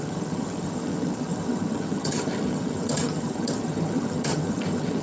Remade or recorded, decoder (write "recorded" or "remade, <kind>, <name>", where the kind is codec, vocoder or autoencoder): remade, vocoder, HiFi-GAN